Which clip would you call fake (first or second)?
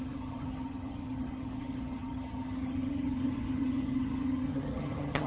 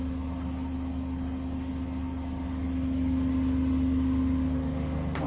first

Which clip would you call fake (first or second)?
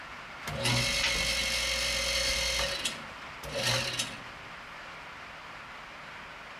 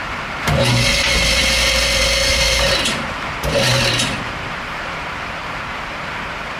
second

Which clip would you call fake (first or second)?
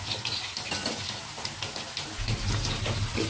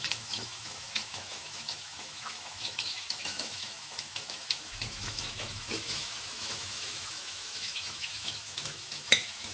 second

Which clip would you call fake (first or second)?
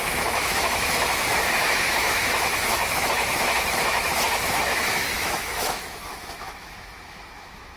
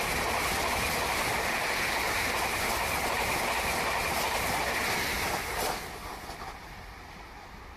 first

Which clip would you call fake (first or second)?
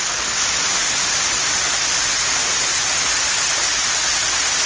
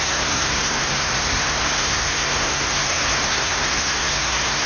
second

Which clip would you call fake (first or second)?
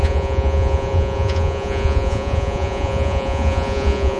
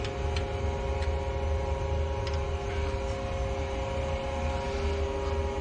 first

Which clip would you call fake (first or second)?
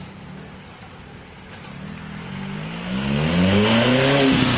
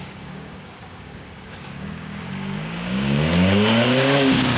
second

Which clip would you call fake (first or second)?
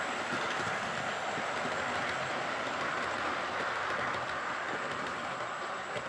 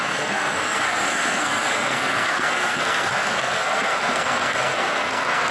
second